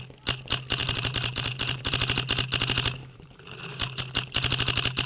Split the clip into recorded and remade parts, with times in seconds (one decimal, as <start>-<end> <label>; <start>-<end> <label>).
0.0-0.8 recorded; 0.8-1.9 remade; 1.9-3.0 recorded; 3.0-4.0 remade; 4.0-5.1 recorded